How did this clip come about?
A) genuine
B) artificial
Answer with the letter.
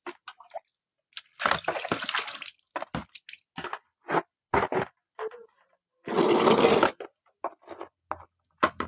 A